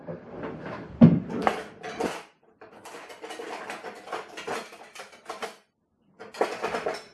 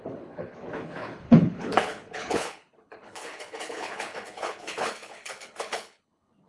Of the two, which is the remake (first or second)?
second